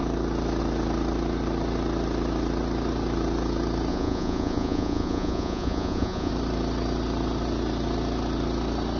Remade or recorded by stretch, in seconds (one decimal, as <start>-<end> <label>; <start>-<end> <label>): 0.0-3.9 recorded; 3.9-6.3 remade; 6.3-9.0 recorded